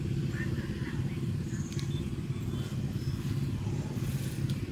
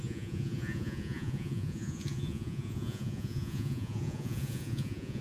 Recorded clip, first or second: first